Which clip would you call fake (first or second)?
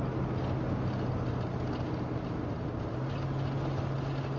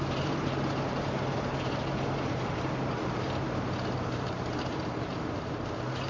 second